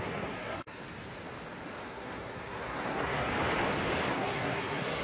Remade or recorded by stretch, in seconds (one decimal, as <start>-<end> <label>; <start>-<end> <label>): 0.0-0.8 remade; 0.8-1.9 recorded; 1.9-3.3 remade; 3.3-4.1 recorded; 4.1-5.0 remade